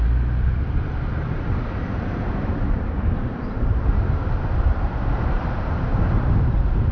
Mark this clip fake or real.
fake